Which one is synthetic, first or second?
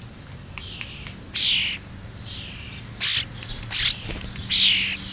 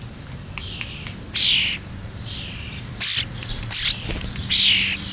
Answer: second